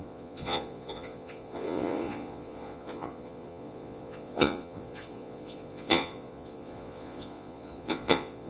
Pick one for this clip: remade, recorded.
remade